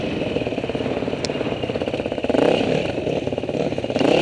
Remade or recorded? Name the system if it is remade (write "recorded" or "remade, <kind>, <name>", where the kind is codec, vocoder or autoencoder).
recorded